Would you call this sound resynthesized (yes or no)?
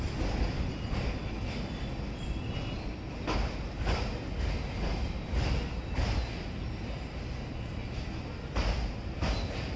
no